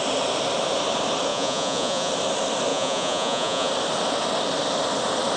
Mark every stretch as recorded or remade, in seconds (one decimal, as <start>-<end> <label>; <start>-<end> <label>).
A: 0.0-1.3 recorded; 1.3-2.1 remade; 2.1-2.7 recorded; 2.7-3.7 remade; 3.7-5.4 recorded